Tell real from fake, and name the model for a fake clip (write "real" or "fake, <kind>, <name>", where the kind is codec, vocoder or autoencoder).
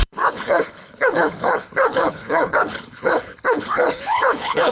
fake, codec, HILCodec